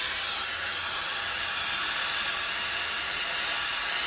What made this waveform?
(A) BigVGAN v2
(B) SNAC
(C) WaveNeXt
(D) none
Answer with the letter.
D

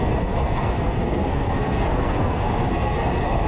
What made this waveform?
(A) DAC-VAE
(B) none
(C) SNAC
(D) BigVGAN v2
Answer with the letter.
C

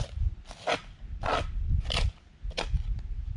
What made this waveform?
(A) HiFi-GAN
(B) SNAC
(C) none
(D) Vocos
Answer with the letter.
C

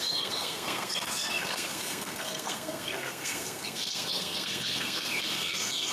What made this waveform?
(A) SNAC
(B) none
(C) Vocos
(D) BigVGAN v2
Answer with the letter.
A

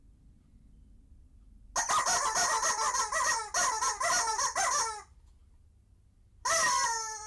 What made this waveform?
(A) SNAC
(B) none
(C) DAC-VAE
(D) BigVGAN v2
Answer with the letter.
B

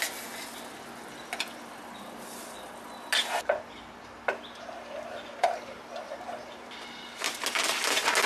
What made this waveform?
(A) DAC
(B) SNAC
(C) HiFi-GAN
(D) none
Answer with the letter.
D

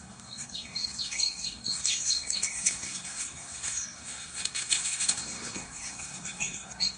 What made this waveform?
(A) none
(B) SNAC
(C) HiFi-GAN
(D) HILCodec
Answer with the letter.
B